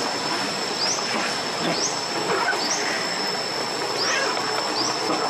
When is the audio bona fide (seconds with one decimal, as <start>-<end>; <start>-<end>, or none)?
0.0-5.3